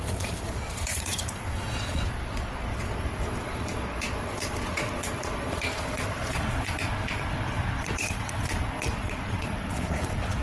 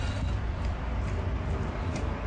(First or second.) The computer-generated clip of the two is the first